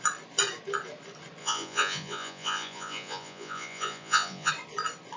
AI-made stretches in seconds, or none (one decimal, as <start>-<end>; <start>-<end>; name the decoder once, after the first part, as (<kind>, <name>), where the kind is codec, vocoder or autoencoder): 1.4-4.5 (vocoder, Vocos)